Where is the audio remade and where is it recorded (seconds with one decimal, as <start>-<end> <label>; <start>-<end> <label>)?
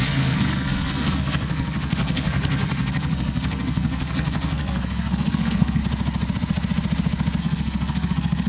0.0-5.8 remade; 5.8-7.4 recorded; 7.4-8.5 remade